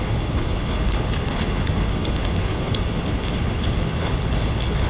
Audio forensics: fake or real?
fake